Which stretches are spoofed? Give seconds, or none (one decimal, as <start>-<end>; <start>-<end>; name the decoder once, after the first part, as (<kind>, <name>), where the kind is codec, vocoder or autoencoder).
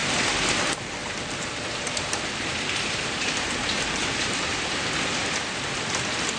0.0-0.6 (vocoder, BigVGAN v2); 1.0-3.3; 4.0-4.8